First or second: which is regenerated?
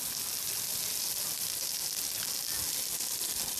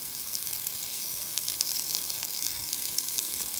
second